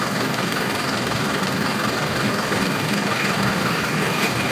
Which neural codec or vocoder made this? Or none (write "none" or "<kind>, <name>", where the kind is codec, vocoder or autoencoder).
codec, DAC